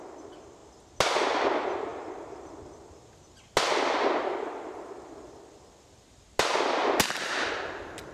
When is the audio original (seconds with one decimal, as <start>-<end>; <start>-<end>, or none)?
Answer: 0.0-8.1

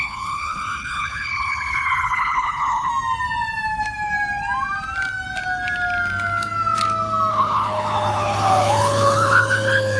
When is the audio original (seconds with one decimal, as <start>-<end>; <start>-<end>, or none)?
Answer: 2.9-7.3

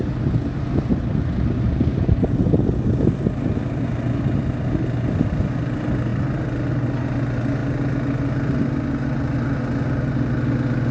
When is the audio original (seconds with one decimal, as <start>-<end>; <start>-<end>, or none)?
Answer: 0.0-10.9

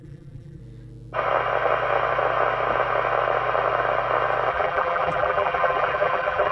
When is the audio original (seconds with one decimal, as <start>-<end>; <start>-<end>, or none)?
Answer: 0.6-4.5

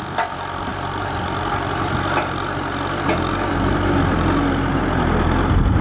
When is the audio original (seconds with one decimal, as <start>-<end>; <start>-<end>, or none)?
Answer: 0.0-5.8

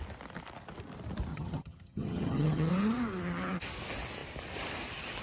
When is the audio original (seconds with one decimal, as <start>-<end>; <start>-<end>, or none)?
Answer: 0.0-1.3; 2.7-5.2

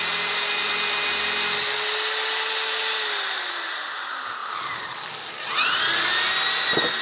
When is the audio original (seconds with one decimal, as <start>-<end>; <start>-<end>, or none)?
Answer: 0.0-4.4; 5.8-7.0

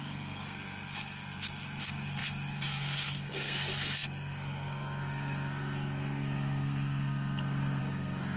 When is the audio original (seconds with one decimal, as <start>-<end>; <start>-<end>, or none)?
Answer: none